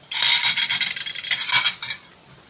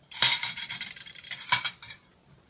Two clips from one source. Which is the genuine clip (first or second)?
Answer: first